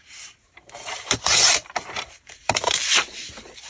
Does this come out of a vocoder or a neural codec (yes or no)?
yes